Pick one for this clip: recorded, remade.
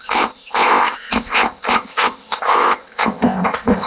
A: remade